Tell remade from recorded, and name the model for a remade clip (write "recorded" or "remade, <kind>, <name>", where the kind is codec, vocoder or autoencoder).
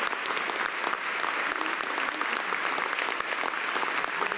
recorded